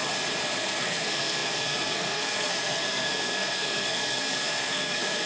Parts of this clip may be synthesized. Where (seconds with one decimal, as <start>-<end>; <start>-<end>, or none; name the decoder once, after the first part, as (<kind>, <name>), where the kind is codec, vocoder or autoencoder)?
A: 0.6-5.3 (codec, SNAC)

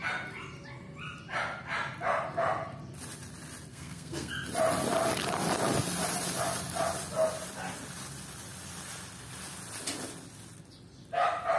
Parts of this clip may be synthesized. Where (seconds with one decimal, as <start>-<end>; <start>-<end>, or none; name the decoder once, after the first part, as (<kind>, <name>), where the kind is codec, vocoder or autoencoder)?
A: 3.7-4.3 (codec, SNAC)

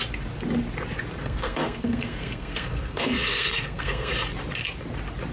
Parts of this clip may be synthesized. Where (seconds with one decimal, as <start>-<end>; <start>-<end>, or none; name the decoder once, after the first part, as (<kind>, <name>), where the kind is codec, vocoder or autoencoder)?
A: 1.2-4.1 (codec, SNAC)

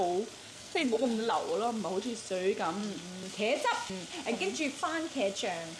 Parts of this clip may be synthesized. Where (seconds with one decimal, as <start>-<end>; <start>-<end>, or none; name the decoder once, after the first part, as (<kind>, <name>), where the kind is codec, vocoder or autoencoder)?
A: 0.4-1.3 (codec, SNAC)

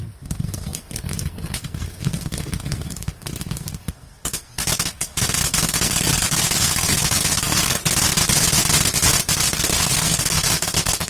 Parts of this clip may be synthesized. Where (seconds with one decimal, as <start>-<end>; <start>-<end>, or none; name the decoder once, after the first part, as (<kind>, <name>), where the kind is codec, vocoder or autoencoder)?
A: 0.0-7.8 (codec, SNAC); 9.3-11.1

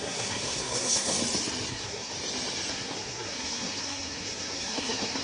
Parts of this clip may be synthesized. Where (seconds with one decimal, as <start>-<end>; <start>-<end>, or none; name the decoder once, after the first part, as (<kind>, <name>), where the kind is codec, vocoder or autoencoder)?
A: 0.0-1.2 (codec, SNAC); 1.7-2.1; 2.7-5.2

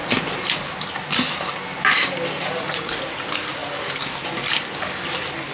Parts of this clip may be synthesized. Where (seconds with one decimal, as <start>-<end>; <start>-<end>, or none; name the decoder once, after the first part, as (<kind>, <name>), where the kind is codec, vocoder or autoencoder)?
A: none

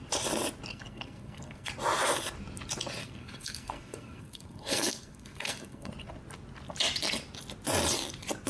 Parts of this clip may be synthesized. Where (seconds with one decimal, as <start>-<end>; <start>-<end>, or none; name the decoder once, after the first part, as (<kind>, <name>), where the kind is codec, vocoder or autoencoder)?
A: 0.7-1.7 (codec, SNAC); 3.0-5.9